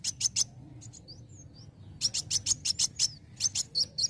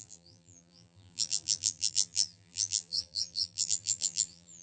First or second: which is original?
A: first